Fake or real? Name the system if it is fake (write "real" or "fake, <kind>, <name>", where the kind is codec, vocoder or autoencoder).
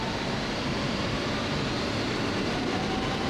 real